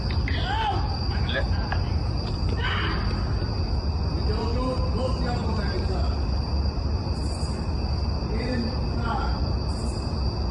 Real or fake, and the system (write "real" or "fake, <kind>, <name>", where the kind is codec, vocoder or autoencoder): real